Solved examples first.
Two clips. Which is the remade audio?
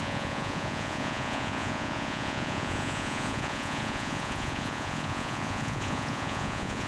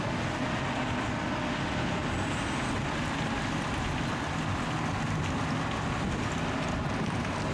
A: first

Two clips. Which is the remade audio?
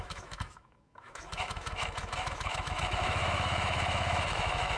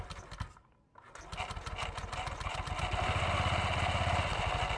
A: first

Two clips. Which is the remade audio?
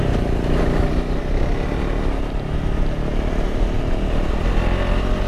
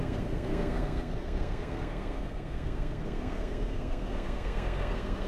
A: second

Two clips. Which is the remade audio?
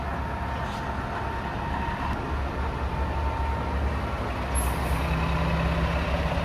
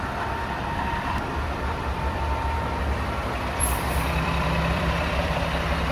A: second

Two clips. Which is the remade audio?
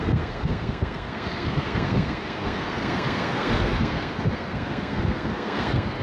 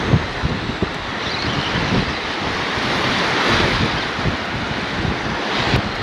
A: first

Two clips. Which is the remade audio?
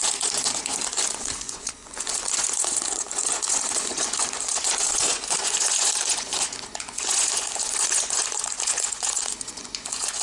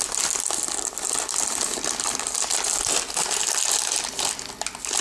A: first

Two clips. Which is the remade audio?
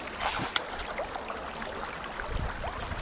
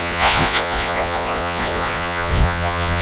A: second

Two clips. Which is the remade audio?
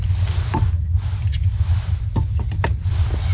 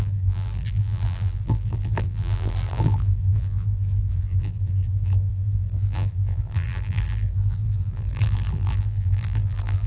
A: second